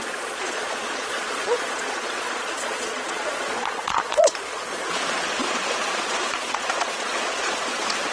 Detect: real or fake fake